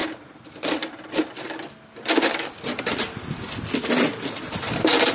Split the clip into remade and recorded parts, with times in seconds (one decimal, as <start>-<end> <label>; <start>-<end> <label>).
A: 0.0-1.3 remade; 1.3-5.1 recorded